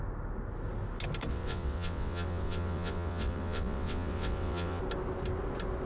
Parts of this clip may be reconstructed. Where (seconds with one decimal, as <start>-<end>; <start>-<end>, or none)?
1.3-4.8